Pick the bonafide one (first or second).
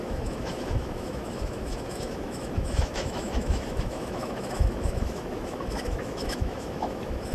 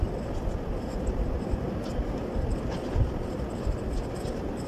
second